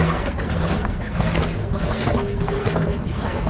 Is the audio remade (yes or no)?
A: yes